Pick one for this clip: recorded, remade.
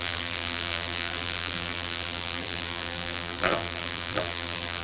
remade